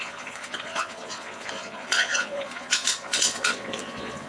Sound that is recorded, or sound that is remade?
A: remade